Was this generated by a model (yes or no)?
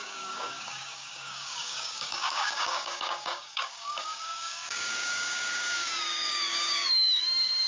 yes